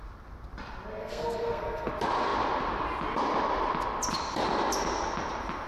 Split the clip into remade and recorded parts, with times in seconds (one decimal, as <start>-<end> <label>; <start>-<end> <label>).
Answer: 0.0-1.0 recorded; 1.0-1.9 remade; 1.9-5.7 recorded